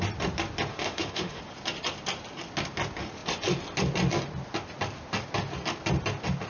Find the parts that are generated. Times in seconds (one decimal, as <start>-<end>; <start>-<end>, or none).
0.7-1.4